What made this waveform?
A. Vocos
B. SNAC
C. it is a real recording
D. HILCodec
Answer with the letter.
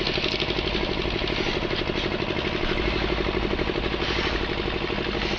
C